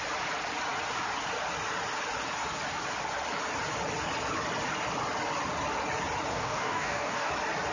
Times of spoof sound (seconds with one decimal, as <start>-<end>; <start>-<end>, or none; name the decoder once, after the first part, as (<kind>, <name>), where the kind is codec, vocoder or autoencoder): 6.3-7.3 (codec, DAC)